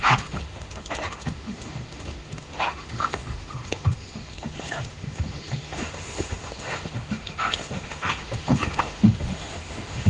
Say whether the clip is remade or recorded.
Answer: remade